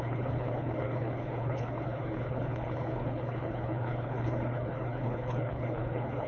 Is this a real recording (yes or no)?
no